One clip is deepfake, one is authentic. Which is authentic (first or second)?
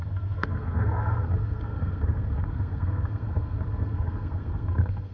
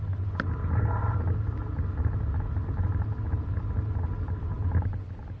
second